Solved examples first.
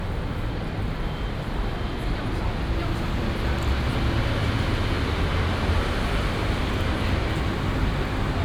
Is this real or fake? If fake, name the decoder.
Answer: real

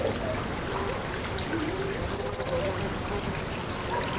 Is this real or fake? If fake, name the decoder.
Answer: real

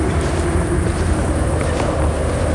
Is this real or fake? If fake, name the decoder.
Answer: real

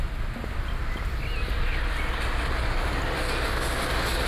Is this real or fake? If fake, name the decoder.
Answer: real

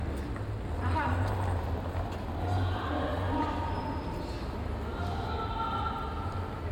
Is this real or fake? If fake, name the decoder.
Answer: real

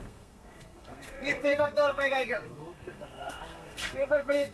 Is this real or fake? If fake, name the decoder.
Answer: fake, codec, SNAC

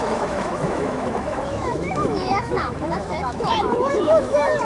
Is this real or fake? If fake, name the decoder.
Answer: fake, autoencoder, DAC-VAE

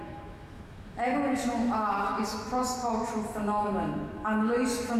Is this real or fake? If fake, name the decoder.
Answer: fake, autoencoder, DAC-VAE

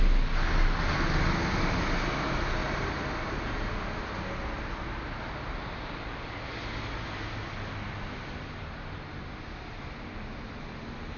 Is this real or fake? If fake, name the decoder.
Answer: real